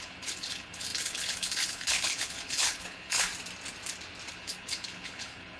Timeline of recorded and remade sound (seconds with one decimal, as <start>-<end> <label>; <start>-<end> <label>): 0.0-3.3 remade; 3.3-4.3 recorded; 4.3-5.6 remade